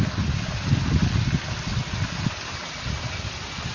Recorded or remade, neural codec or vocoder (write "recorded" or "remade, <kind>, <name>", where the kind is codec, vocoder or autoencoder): recorded